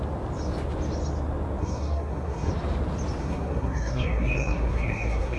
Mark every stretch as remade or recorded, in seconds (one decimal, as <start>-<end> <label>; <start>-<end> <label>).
0.0-1.6 recorded; 1.6-2.5 remade; 2.5-3.2 recorded; 3.2-5.4 remade